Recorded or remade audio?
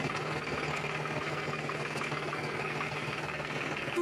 remade